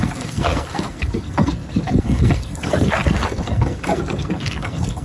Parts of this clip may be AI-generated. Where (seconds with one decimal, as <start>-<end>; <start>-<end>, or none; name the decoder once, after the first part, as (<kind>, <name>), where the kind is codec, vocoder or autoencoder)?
0.0-5.0 (codec, SNAC)